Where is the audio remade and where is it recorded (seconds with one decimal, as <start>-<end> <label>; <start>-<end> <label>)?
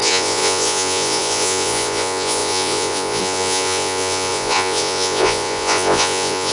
0.0-6.5 remade